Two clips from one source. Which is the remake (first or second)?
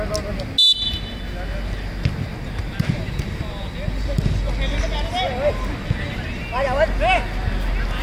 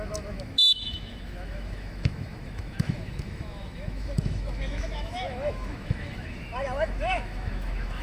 second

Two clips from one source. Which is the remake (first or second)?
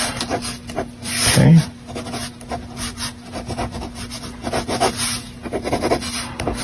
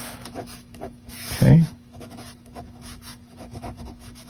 second